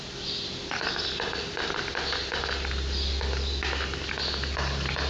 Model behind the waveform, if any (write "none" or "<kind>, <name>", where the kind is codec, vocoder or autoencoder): none